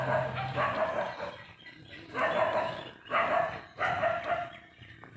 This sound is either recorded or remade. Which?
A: recorded